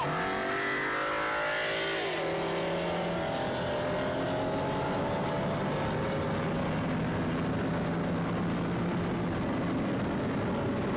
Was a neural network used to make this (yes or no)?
no